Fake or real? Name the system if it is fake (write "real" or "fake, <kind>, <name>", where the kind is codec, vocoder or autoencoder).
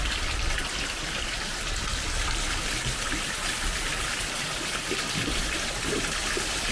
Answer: real